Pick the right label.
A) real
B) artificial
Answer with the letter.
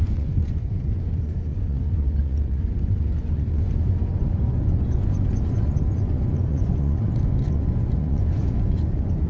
B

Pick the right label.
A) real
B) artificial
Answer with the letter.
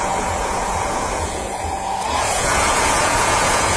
B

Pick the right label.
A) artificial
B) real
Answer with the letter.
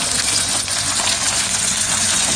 A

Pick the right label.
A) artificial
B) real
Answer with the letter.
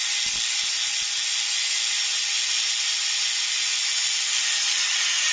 B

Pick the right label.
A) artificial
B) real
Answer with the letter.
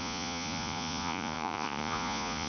A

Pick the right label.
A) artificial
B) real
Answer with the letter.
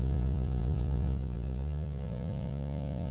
A